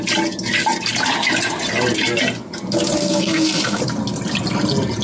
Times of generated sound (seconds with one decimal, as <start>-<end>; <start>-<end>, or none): 3.0-3.8